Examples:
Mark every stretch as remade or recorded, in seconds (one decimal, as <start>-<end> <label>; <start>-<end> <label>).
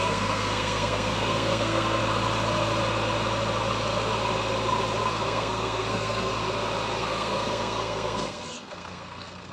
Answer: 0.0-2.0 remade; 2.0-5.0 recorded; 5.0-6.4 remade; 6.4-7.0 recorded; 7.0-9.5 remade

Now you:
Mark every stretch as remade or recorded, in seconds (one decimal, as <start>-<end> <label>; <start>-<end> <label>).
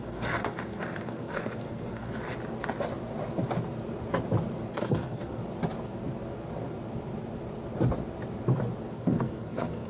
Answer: 0.0-2.2 remade; 2.2-4.7 recorded; 4.7-5.4 remade; 5.4-8.9 recorded; 8.9-9.9 remade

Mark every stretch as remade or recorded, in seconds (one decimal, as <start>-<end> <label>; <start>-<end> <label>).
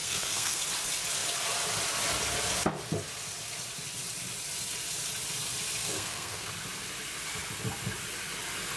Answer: 0.0-0.6 remade; 0.6-5.8 recorded; 5.8-6.5 remade; 6.5-8.8 recorded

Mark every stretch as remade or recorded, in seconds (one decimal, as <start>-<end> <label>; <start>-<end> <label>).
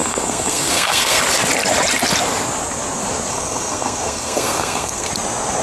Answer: 0.0-1.2 remade; 1.2-3.3 recorded; 3.3-5.1 remade; 5.1-5.6 recorded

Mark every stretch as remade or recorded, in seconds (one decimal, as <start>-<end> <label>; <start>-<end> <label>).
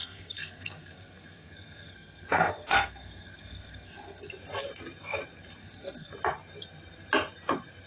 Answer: 0.0-4.3 remade; 4.3-5.6 recorded; 5.6-6.1 remade; 6.1-7.9 recorded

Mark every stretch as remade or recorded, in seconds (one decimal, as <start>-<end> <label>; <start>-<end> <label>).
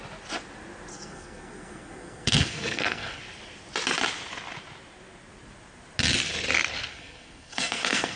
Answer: 0.0-0.9 recorded; 0.9-3.2 remade; 3.2-6.9 recorded; 6.9-8.2 remade